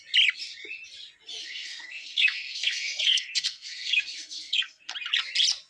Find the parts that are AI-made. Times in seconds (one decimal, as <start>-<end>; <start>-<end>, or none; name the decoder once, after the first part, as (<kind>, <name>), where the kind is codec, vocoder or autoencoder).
1.4-4.8 (codec, SNAC)